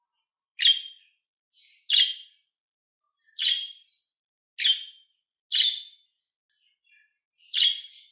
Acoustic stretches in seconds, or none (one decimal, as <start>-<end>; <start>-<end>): 0.0-8.1